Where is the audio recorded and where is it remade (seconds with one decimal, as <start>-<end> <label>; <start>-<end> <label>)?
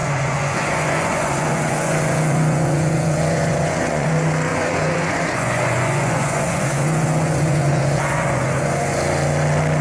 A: 0.0-4.1 remade; 4.1-4.5 recorded; 4.5-9.0 remade; 9.0-9.8 recorded